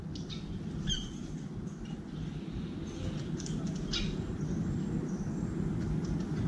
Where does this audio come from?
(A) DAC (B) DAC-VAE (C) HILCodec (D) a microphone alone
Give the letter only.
D